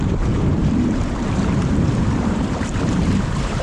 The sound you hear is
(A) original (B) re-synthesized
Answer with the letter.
B